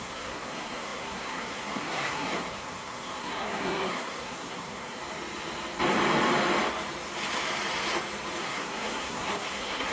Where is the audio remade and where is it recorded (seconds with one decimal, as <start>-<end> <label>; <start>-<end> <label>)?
0.0-5.0 remade; 5.0-8.4 recorded; 8.4-9.9 remade